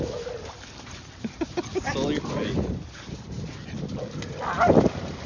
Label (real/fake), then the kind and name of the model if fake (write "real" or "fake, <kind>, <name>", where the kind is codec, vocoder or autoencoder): real